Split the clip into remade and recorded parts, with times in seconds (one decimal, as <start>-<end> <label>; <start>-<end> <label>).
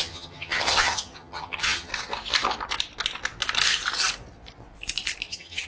0.0-1.9 remade; 1.9-5.3 recorded; 5.3-5.7 remade